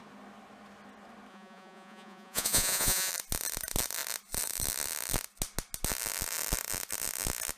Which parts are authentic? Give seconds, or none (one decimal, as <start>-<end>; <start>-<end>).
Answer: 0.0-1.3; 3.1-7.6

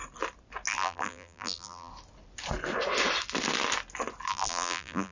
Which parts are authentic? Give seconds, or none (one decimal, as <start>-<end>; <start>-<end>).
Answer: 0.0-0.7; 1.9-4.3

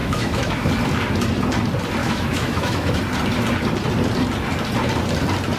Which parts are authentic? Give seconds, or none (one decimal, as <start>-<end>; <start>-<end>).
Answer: 0.7-2.0; 3.0-5.6

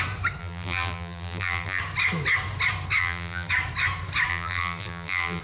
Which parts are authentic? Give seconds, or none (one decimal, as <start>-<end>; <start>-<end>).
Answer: 0.0-0.4; 1.8-3.0; 3.5-4.3

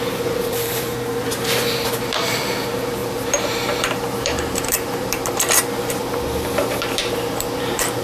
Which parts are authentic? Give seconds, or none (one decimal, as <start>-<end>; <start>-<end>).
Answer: none

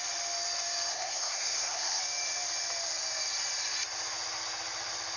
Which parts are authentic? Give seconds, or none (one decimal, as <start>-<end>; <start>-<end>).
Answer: 0.0-0.9; 2.0-5.2

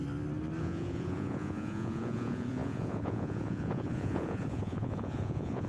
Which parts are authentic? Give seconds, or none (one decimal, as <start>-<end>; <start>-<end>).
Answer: 0.0-0.6

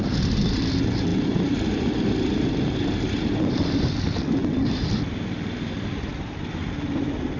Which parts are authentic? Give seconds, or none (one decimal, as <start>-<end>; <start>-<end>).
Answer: 1.1-3.5